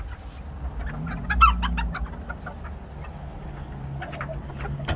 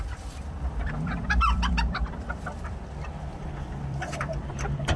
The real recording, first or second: first